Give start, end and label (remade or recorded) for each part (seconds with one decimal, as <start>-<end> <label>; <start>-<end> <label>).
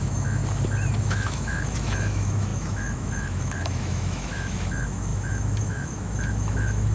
0.0-0.4 remade; 0.4-1.0 recorded; 1.0-6.9 remade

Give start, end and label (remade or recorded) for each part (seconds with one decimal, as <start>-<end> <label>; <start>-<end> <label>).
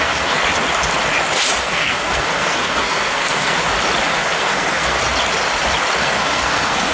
0.0-0.4 remade; 0.4-1.6 recorded; 1.6-3.6 remade; 3.6-4.1 recorded; 4.1-5.0 remade; 5.0-6.0 recorded; 6.0-6.9 remade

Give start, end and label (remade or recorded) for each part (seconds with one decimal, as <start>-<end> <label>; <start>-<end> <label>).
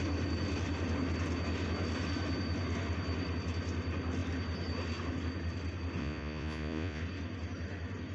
0.0-6.0 recorded; 6.0-7.0 remade; 7.0-8.1 recorded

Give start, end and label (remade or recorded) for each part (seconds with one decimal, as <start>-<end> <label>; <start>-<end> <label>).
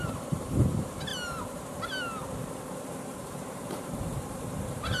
0.0-1.1 remade; 1.1-2.9 recorded; 2.9-5.0 remade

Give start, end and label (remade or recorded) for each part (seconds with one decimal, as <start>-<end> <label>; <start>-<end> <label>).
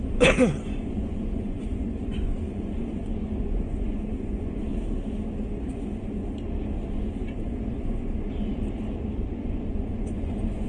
0.0-4.7 remade; 4.7-5.5 recorded; 5.5-6.2 remade; 6.2-6.9 recorded; 6.9-8.6 remade; 8.6-9.2 recorded; 9.2-10.7 remade